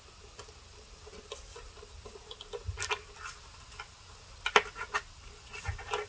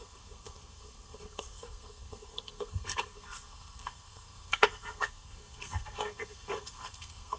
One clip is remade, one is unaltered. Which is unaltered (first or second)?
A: first